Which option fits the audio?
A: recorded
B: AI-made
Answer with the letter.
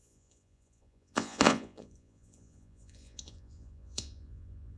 B